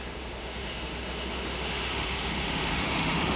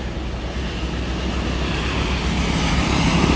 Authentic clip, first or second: second